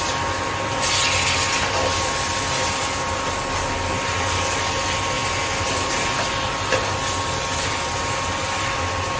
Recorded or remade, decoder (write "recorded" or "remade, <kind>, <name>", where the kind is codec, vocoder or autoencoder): recorded